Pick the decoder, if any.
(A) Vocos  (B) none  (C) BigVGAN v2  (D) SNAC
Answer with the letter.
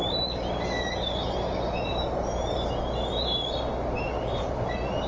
B